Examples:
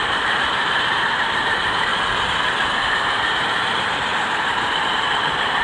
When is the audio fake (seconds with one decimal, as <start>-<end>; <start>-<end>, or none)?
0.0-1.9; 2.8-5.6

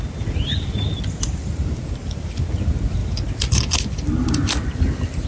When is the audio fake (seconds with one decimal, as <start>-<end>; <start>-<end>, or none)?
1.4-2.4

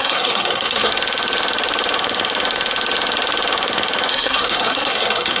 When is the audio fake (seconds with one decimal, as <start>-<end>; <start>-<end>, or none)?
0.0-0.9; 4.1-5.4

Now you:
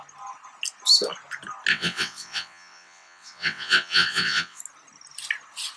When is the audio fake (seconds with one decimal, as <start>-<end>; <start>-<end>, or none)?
1.7-4.6